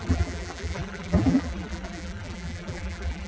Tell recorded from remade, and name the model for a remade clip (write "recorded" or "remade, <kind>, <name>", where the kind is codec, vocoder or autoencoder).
remade, vocoder, BigVGAN v2